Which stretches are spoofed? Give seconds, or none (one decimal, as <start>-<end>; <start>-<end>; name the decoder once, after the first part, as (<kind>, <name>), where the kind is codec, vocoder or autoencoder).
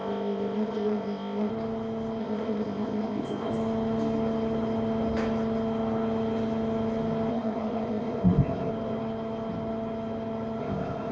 0.0-1.5 (codec, ZipCodec); 2.2-3.5; 7.3-8.7; 10.6-11.1